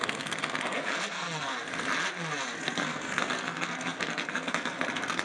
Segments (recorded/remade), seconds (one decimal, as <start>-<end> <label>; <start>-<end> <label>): 0.0-1.5 remade; 1.5-2.6 recorded; 2.6-5.2 remade